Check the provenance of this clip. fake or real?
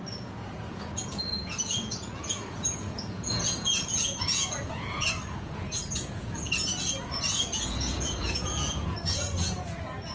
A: fake